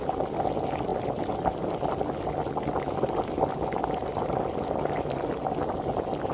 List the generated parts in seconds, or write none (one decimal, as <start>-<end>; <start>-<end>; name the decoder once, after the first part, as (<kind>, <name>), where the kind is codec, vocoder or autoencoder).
4.0-4.6 (vocoder, BigVGAN v2)

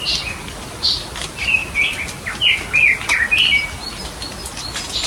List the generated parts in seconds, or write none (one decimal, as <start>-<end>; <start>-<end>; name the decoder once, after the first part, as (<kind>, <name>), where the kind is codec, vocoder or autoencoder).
none

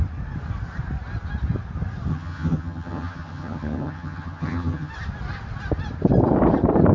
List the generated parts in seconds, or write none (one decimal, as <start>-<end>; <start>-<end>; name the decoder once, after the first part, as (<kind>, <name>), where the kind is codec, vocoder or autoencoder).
2.1-4.9 (vocoder, HiFi-GAN)

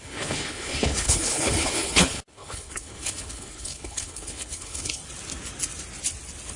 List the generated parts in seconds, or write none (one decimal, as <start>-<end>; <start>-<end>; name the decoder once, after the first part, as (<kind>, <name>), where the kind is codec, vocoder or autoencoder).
0.0-5.0 (codec, HILCodec)

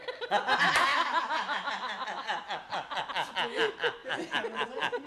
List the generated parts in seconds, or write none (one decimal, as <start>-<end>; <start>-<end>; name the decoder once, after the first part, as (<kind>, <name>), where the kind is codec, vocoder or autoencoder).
0.9-3.0 (vocoder, BigVGAN v2); 4.0-5.1

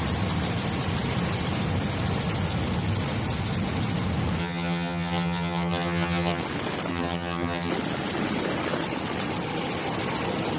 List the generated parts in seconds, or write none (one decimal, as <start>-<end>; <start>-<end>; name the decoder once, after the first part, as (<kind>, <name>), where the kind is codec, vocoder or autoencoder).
4.4-6.4 (vocoder, HiFi-GAN); 6.9-7.7